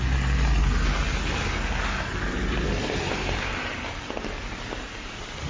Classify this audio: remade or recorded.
recorded